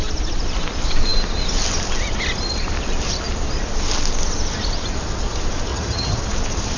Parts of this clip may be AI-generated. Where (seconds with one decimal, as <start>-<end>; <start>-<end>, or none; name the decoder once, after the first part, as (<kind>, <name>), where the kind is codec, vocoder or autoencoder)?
5.7-6.2 (vocoder, HiFi-GAN)